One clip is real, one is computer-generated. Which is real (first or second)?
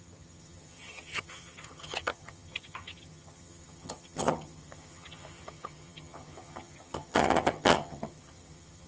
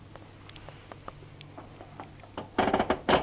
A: second